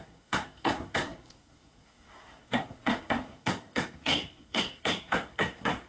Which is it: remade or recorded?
remade